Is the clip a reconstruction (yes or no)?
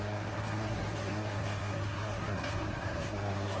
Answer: yes